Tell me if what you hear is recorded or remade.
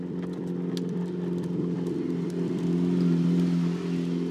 recorded